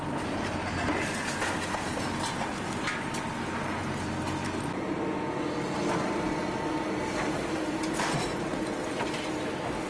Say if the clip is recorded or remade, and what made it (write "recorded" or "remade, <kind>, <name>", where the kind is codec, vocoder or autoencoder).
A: recorded